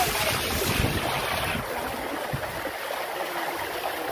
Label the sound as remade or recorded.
recorded